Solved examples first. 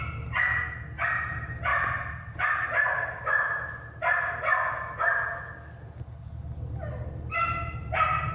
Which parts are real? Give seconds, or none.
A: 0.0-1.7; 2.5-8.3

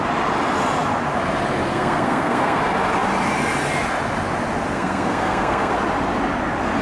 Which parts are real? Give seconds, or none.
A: 0.0-1.7; 2.6-4.7; 5.7-6.8

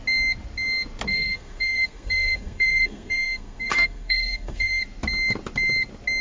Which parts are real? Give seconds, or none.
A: 0.0-1.1; 4.8-6.2